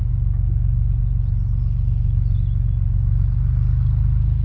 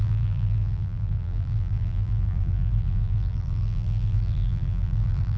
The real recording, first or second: first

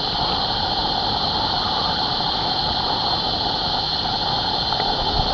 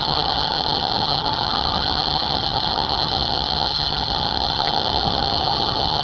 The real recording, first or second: first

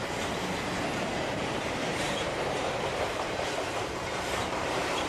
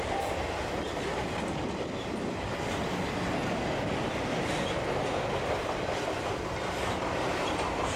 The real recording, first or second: second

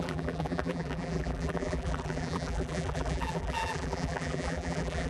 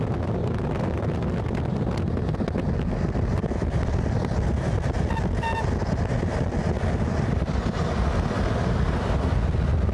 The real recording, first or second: second